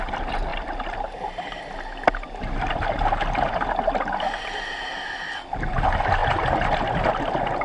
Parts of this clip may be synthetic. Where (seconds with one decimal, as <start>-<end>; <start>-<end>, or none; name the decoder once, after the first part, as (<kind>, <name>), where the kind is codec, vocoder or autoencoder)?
0.0-0.5 (vocoder, BigVGAN v2); 4.2-6.2; 6.9-7.6